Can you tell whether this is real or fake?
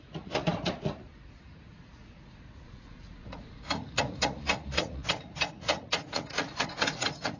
fake